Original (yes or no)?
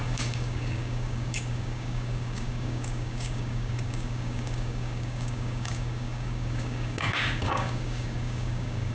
no